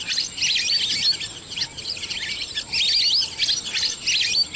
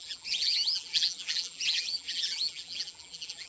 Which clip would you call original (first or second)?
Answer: first